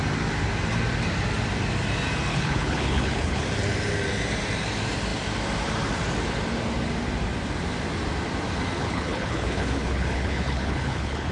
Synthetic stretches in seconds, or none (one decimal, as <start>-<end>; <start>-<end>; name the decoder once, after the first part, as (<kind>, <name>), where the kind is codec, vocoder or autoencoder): 2.3-3.4 (codec, HILCodec); 8.8-11.3